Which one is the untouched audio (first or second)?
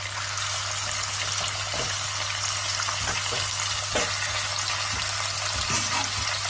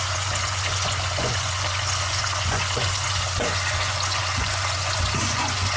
first